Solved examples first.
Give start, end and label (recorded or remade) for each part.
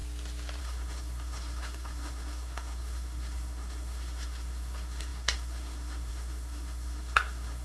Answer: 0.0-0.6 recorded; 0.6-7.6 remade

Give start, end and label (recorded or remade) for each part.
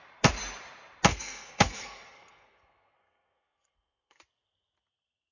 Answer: 0.0-1.1 recorded; 1.1-4.2 remade; 4.2-5.3 recorded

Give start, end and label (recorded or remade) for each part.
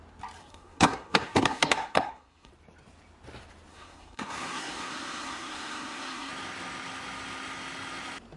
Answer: 0.0-0.4 recorded; 0.4-2.5 remade; 2.5-3.7 recorded; 3.7-6.3 remade; 6.3-8.4 recorded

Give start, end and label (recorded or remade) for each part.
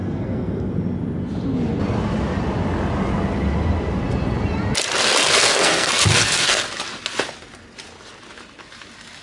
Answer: 0.0-0.7 remade; 0.7-5.2 recorded; 5.2-6.6 remade; 6.6-9.2 recorded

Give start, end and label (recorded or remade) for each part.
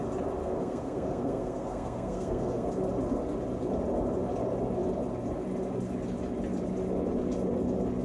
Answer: 0.0-0.4 recorded; 0.4-2.7 remade; 2.7-8.0 recorded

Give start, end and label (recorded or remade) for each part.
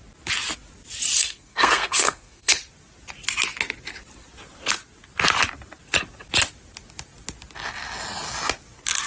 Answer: 0.0-1.2 recorded; 1.2-2.6 remade; 2.6-9.1 recorded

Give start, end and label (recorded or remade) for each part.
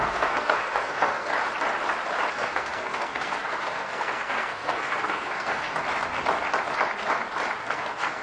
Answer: 0.0-1.3 remade; 1.3-2.3 recorded; 2.3-5.7 remade; 5.7-7.6 recorded; 7.6-8.2 remade